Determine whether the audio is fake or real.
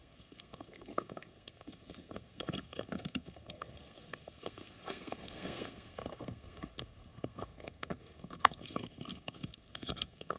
fake